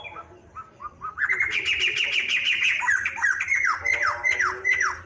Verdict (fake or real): real